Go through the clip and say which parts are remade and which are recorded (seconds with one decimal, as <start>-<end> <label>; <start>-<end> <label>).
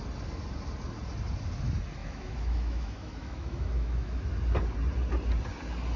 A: 0.0-2.0 recorded; 2.0-4.3 remade; 4.3-6.0 recorded